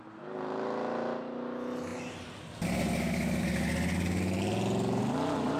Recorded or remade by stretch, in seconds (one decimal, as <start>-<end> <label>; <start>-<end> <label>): 0.0-5.6 recorded